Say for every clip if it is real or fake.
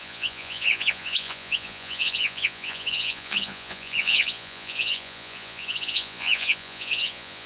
fake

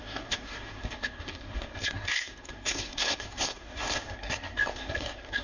fake